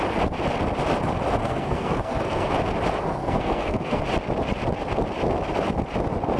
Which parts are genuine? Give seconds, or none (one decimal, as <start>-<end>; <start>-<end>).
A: 0.0-1.4; 2.5-3.2; 4.0-6.4